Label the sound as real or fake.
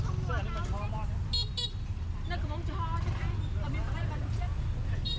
real